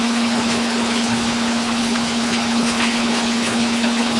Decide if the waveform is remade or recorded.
remade